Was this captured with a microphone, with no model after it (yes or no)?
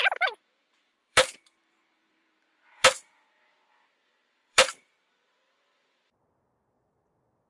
no